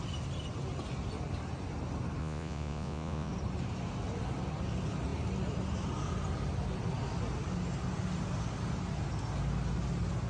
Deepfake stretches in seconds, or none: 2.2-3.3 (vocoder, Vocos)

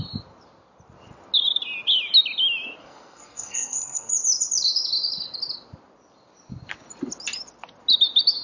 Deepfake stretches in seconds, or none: 2.8-4.1 (codec, SNAC)